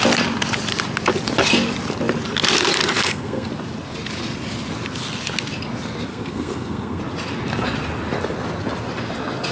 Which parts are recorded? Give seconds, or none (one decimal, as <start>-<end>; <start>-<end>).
0.0-3.0; 3.5-6.1; 7.0-9.5